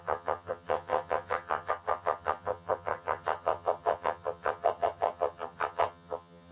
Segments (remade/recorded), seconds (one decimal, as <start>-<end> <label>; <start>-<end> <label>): 0.0-6.5 remade